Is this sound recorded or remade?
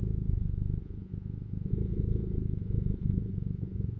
remade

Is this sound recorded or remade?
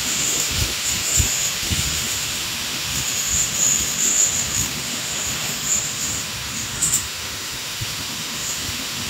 remade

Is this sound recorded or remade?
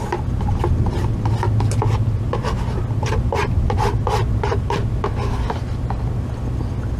recorded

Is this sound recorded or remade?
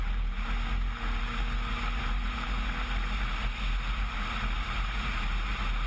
recorded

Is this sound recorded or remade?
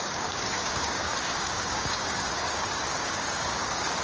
remade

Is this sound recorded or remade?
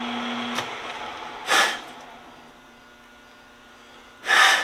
recorded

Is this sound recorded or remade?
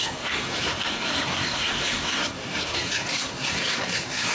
remade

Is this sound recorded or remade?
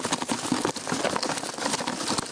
recorded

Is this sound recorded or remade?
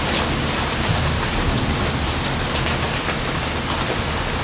recorded